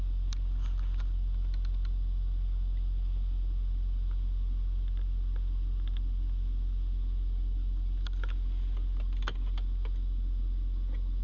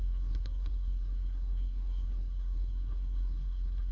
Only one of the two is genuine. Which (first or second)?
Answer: first